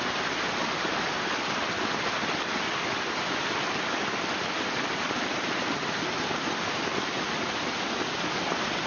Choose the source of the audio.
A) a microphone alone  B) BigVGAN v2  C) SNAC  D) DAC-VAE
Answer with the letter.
B